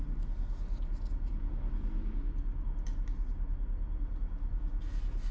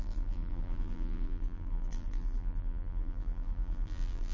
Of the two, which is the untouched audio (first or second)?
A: first